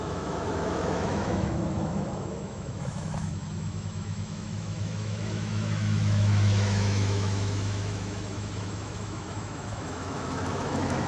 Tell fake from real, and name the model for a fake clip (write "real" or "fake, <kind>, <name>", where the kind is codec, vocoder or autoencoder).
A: fake, autoencoder, DAC-VAE